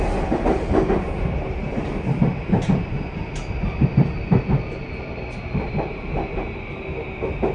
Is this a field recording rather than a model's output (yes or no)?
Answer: yes